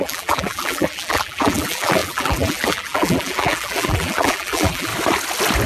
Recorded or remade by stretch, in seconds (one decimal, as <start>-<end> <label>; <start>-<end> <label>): 0.0-4.9 remade; 4.9-5.7 recorded